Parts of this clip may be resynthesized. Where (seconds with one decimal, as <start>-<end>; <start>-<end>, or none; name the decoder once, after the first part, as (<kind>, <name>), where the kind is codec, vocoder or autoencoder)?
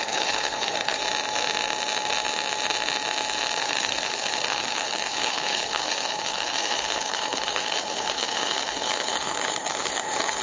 0.0-1.0 (codec, HILCodec); 3.6-10.4